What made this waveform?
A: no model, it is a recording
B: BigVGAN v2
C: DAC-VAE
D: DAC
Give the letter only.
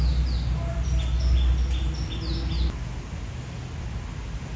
A